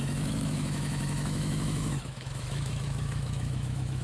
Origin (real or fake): fake